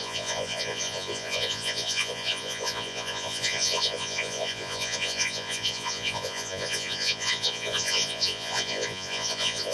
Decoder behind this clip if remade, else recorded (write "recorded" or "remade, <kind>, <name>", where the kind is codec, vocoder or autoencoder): remade, vocoder, Vocos